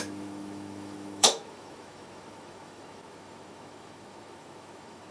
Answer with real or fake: fake